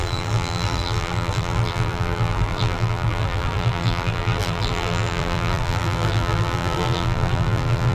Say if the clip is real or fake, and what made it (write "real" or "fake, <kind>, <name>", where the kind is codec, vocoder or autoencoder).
fake, vocoder, BigVGAN v2